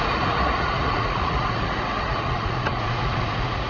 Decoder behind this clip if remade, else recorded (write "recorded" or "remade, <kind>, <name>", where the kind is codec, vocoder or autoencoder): remade, vocoder, Vocos